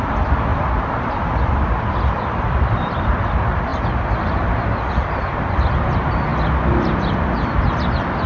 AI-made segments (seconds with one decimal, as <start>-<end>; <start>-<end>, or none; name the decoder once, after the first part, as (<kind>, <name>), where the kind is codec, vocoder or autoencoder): 0.0-3.7 (vocoder, BigVGAN v2); 5.4-6.3; 7.6-8.3

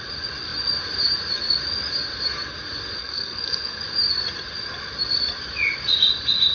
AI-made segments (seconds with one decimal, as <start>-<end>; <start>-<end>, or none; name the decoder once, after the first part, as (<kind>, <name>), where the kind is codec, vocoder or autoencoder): 3.0-3.8 (codec, SNAC)

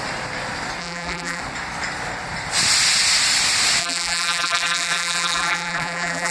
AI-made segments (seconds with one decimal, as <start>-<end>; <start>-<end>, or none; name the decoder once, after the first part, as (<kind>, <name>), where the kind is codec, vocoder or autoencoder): 0.8-1.4 (vocoder, BigVGAN v2); 3.8-6.3

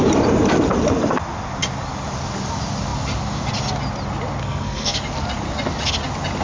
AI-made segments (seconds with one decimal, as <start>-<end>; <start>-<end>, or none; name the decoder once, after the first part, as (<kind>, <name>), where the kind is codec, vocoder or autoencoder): 4.4-5.0 (codec, SNAC)

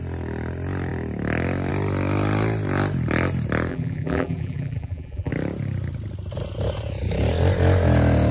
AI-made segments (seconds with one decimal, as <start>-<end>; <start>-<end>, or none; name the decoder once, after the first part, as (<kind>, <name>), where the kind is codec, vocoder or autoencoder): 3.7-5.3 (vocoder, BigVGAN v2)

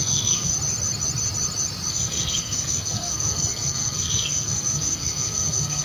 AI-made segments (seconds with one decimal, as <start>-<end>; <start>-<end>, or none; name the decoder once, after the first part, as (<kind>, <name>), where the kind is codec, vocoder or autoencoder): 0.0-0.5 (codec, SNAC); 1.9-5.8

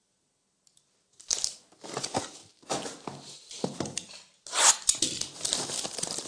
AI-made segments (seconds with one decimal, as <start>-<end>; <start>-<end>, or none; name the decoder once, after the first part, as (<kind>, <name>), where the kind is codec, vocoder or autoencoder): none

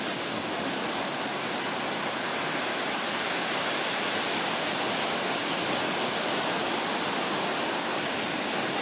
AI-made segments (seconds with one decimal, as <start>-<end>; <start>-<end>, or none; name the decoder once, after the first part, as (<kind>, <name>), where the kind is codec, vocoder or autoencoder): none